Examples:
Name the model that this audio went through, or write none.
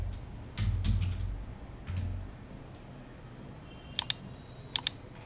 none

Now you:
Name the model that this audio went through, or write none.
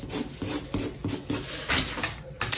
none